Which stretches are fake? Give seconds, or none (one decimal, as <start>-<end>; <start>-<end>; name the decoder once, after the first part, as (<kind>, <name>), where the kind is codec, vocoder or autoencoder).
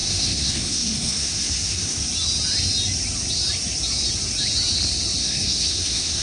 0.0-2.0 (codec, SNAC); 5.2-6.2